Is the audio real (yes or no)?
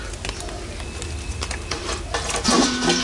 yes